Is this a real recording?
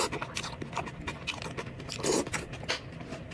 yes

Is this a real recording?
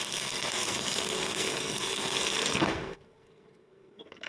no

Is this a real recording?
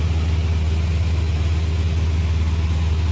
yes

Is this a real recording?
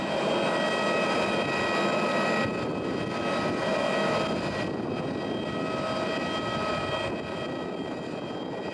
yes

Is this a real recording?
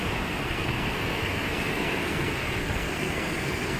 no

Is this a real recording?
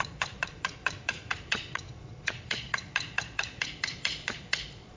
no